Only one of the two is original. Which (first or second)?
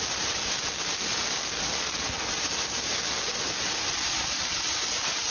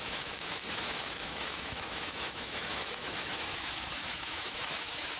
first